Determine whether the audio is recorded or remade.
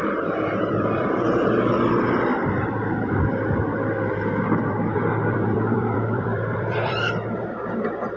remade